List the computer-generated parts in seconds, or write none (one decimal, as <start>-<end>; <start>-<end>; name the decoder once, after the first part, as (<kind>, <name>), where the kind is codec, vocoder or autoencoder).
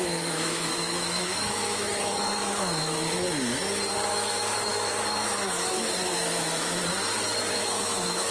0.0-3.2 (autoencoder, DAC-VAE); 4.1-6.8; 7.5-8.3